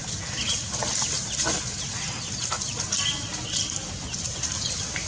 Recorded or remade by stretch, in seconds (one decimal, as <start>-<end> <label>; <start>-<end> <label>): 0.0-5.1 recorded

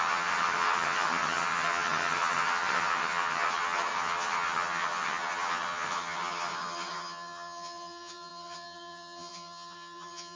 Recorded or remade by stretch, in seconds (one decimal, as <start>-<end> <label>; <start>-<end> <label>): 0.0-10.4 remade

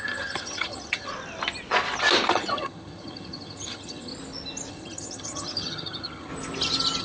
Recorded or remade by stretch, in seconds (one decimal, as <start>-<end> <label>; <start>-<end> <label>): 0.0-1.1 remade; 1.1-2.3 recorded; 2.3-4.1 remade; 4.1-4.7 recorded; 4.7-6.3 remade; 6.3-7.0 recorded